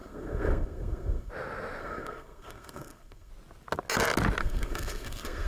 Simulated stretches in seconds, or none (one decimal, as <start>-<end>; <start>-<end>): 0.0-1.3; 1.8-3.3; 4.4-5.5